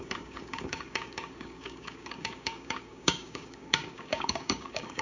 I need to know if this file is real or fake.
fake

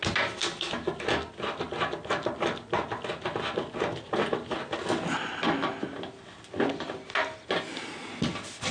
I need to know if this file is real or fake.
real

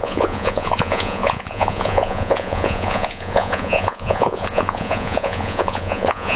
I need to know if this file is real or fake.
fake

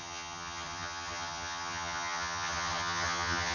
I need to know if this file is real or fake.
fake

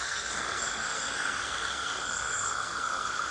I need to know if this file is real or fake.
fake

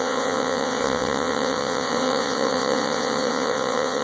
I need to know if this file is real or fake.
fake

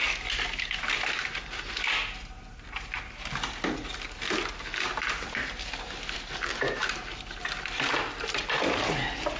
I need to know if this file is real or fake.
real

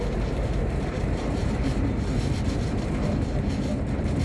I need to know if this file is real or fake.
fake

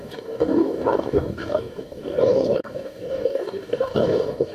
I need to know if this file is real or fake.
fake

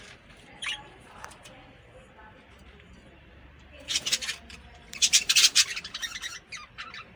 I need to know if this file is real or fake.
fake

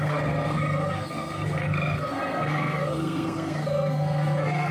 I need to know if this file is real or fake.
fake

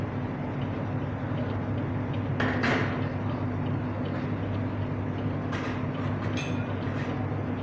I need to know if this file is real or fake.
real